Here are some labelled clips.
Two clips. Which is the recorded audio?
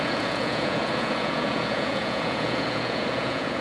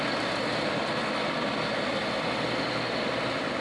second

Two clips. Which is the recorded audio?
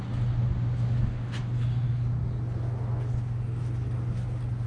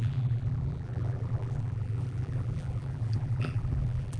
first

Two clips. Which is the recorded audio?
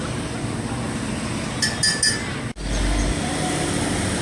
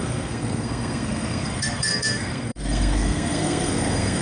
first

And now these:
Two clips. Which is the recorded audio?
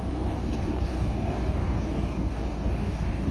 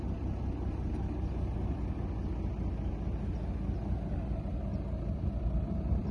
second